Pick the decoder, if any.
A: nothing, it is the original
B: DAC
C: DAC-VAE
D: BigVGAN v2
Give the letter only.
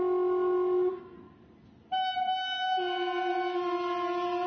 A